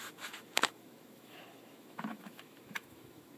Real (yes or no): no